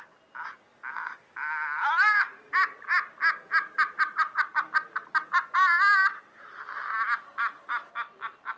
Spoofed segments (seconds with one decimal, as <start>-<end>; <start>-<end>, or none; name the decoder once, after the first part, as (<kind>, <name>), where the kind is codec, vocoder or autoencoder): none